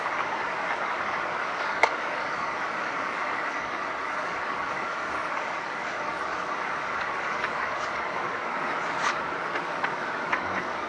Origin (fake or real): fake